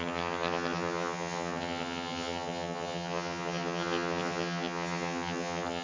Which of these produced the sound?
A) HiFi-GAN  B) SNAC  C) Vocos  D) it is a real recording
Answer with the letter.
A